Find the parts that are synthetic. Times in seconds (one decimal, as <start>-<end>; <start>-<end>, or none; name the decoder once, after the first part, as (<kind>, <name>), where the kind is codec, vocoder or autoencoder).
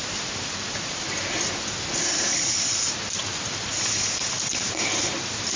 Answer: 0.0-3.7 (vocoder, BigVGAN v2); 5.0-5.6